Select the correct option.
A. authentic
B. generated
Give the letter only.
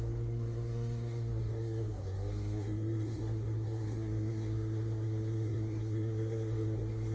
B